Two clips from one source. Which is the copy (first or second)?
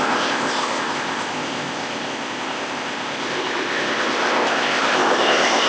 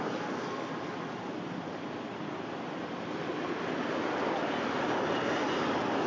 first